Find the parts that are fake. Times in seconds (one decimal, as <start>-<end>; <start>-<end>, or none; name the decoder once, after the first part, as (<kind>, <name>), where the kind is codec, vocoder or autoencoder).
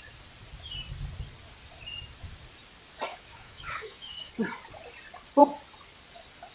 3.1-4.3 (autoencoder, DAC-VAE)